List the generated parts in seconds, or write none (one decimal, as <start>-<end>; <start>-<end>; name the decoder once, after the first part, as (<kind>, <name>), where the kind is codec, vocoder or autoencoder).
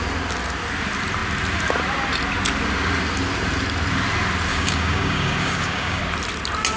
4.5-6.0 (codec, DAC)